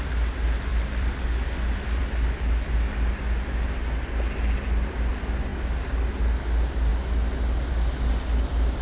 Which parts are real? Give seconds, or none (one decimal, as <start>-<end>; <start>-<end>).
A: 0.0-0.7; 2.1-8.8